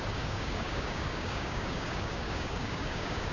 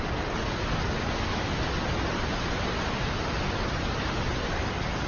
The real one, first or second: second